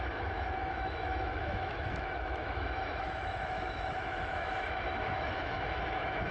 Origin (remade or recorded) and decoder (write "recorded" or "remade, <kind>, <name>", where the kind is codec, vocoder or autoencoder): remade, autoencoder, DAC-VAE